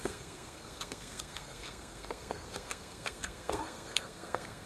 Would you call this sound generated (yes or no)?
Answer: yes